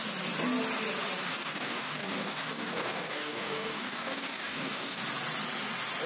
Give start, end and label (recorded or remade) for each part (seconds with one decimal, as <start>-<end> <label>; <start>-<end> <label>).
0.0-1.3 recorded; 1.3-5.0 remade; 5.0-6.1 recorded